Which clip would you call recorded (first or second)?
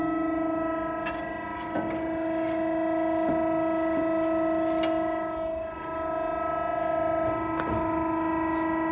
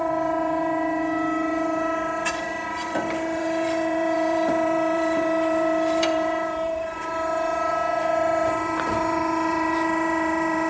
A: first